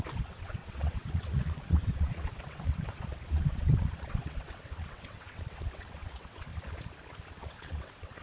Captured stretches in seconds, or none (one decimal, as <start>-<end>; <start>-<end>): 6.5-7.3